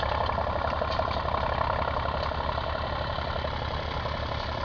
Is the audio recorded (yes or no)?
yes